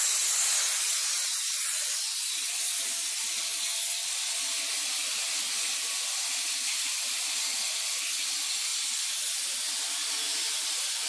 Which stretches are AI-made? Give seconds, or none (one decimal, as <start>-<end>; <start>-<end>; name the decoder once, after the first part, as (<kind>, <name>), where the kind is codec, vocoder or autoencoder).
none